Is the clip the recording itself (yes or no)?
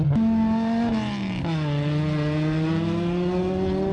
yes